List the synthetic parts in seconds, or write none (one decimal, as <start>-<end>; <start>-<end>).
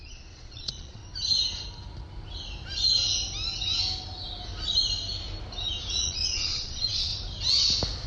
0.0-1.0; 5.9-7.1